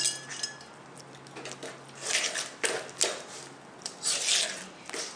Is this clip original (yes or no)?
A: yes